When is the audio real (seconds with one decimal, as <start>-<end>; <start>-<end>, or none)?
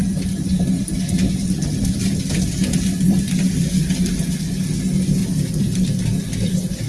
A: 4.1-5.2; 6.5-6.9